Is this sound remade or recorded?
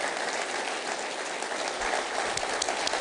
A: recorded